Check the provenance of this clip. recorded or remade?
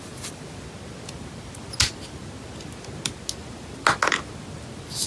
recorded